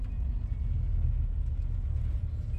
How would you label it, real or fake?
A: real